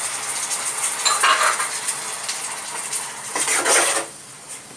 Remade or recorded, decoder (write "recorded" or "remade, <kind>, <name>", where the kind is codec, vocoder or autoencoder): recorded